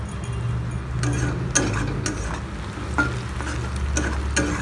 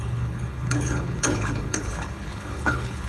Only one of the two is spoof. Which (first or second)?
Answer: second